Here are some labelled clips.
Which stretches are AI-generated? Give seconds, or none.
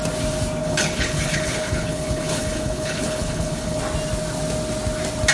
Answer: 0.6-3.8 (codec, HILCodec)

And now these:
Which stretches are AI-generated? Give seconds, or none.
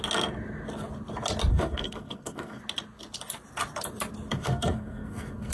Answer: 1.5-2.6 (codec, SNAC); 4.3-5.5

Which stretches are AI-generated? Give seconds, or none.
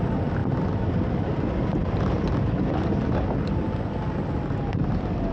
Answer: none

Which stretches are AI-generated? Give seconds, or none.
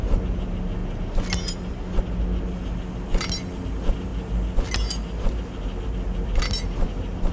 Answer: none